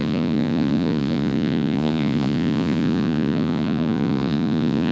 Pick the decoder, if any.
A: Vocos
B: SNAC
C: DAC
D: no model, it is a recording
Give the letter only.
A